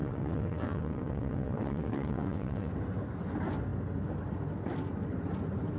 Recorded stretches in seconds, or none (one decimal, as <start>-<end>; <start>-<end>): 2.7-5.8